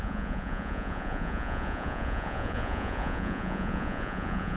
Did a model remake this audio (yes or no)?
yes